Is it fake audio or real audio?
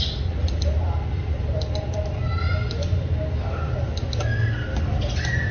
real